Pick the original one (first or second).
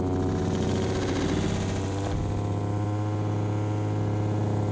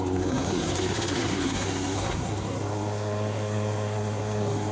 first